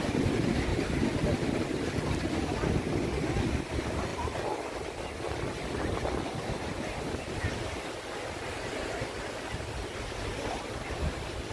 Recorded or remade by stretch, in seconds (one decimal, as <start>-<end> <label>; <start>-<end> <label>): 0.0-11.5 recorded